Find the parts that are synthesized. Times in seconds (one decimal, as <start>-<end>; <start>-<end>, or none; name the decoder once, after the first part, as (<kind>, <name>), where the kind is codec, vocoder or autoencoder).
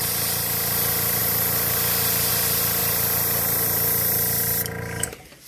none